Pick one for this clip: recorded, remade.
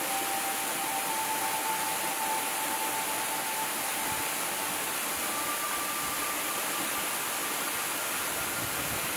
recorded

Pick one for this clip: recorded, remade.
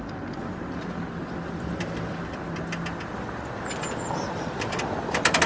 recorded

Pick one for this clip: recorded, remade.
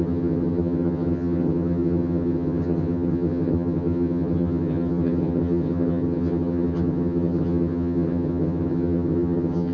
remade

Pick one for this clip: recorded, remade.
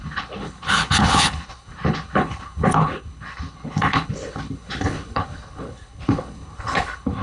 remade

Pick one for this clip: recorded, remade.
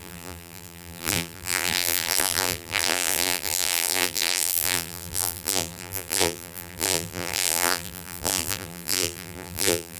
remade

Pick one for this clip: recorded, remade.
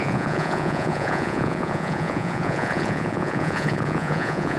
remade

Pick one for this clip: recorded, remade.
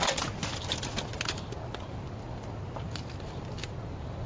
recorded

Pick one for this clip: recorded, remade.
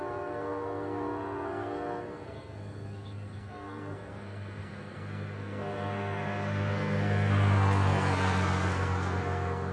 remade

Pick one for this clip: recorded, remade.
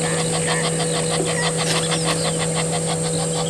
recorded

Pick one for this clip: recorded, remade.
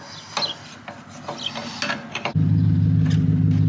recorded